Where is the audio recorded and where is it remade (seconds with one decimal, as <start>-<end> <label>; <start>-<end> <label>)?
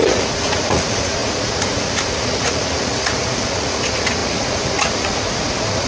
0.0-5.9 remade